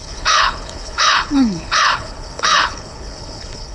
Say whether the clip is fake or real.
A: fake